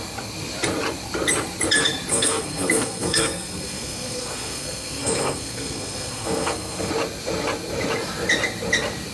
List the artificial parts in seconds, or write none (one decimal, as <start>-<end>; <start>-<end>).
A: 2.1-6.9